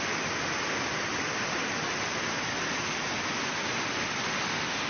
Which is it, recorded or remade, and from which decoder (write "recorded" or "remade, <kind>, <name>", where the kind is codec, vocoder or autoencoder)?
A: recorded